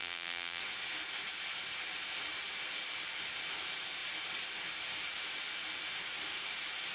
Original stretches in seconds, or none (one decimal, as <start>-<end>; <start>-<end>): 0.6-6.9